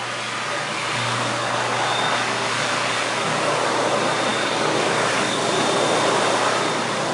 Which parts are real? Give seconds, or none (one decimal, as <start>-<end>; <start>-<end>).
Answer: 0.0-0.5; 3.8-4.3; 5.6-7.1